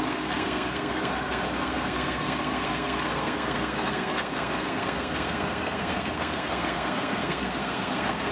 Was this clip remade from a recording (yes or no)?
yes